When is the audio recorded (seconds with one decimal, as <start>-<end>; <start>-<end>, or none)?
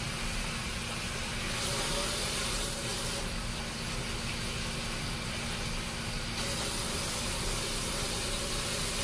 0.0-9.0